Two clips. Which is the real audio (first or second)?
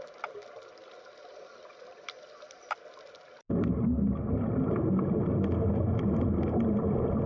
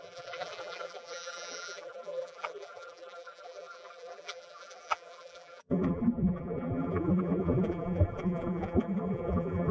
first